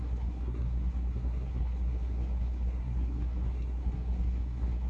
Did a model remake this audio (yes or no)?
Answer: yes